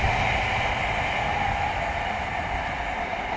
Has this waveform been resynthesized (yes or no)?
no